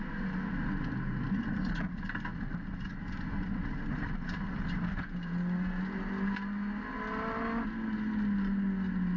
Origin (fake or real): real